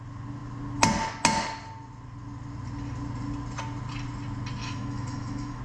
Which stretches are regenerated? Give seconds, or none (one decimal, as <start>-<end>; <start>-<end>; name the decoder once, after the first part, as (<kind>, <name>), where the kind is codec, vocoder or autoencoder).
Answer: 4.6-5.6 (autoencoder, DAC-VAE)